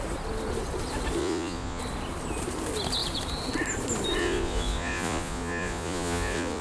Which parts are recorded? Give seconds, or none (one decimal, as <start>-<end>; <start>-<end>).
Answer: 0.0-1.2; 1.8-4.2

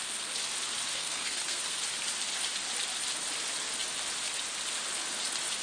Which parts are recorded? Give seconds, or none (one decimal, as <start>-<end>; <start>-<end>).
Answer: 0.0-0.9; 1.8-5.6

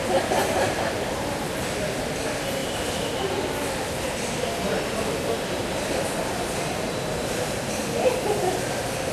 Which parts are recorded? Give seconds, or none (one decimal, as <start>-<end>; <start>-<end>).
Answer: 0.0-0.4; 1.7-5.6; 7.8-9.1

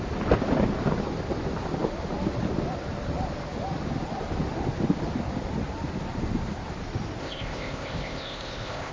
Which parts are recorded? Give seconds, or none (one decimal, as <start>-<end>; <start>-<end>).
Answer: 0.0-7.2

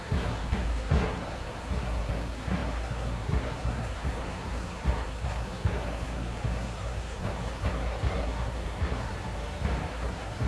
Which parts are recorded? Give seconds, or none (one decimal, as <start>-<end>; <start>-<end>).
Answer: 9.1-9.9